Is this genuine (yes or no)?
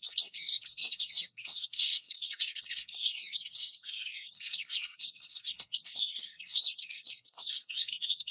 no